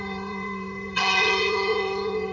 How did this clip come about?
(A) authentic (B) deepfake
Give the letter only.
B